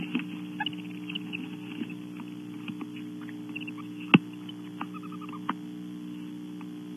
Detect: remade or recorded recorded